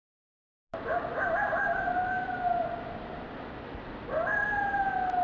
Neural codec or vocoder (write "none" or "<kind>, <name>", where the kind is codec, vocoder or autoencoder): none